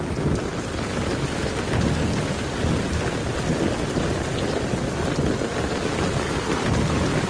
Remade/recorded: recorded